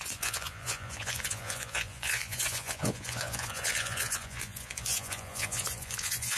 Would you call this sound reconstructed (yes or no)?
yes